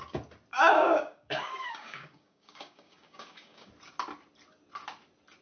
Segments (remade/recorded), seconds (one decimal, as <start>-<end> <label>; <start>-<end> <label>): 0.0-0.5 recorded; 0.5-3.7 remade; 3.7-5.4 recorded